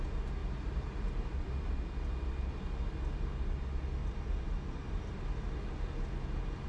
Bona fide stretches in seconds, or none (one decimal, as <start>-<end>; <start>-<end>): 0.0-0.4; 1.7-4.0; 5.2-6.7